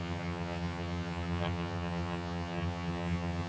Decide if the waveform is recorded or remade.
remade